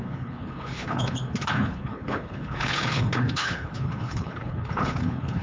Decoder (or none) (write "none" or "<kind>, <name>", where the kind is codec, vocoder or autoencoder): codec, HILCodec